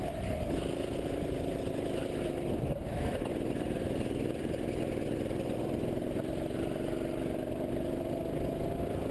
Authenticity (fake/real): real